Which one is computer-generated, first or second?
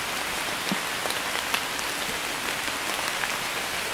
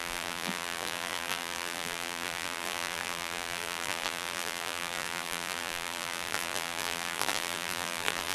second